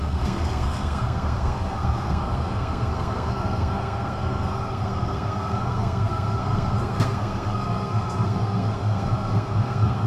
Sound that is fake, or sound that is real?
fake